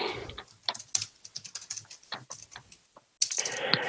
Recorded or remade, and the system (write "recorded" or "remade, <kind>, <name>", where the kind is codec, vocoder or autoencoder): recorded